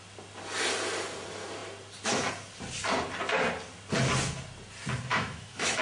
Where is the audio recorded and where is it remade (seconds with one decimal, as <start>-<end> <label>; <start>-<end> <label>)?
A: 0.0-5.1 recorded; 5.1-5.8 remade